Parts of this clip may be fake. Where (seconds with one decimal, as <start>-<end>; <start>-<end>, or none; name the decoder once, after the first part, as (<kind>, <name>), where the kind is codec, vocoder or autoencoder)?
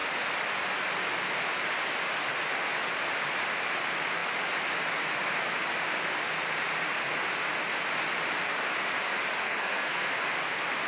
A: 9.4-10.1 (codec, SNAC)